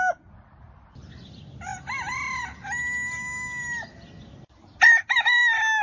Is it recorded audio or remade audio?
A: recorded